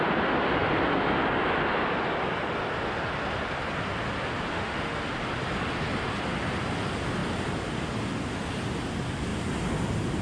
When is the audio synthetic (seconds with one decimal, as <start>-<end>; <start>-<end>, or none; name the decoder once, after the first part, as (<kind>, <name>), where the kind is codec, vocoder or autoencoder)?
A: 4.5-5.1 (autoencoder, DAC-VAE)